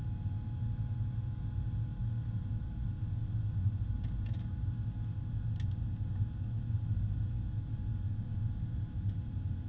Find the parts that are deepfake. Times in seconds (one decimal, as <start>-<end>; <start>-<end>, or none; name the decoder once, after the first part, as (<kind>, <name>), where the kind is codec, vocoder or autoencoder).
none